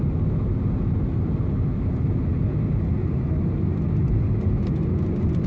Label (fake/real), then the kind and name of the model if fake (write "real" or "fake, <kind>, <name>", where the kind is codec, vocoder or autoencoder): real